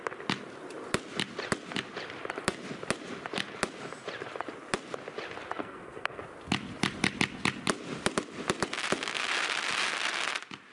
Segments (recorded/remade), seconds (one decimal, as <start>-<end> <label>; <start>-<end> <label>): 0.0-5.6 recorded; 5.6-6.2 remade; 6.2-10.7 recorded